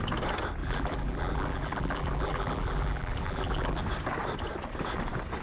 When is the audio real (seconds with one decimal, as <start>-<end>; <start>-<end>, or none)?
0.0-0.6; 3.8-5.4